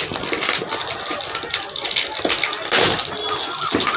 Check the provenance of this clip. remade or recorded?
recorded